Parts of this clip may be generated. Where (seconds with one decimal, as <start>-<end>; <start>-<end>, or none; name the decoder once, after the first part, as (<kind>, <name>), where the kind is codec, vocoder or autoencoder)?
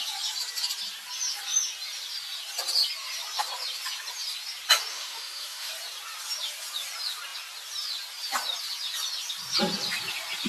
4.9-5.7 (autoencoder, DAC-VAE)